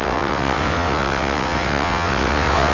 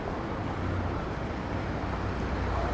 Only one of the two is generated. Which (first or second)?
first